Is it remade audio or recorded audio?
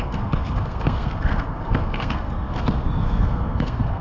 remade